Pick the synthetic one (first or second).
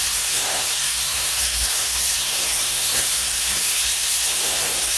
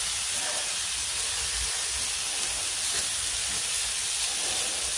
first